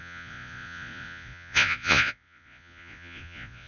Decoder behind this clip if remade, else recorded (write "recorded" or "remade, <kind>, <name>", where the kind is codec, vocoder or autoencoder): remade, vocoder, Vocos